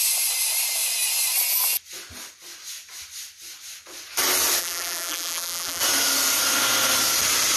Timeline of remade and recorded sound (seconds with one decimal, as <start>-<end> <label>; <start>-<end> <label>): 0.0-4.6 recorded; 4.6-5.8 remade; 5.8-7.6 recorded